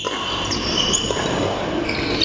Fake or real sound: real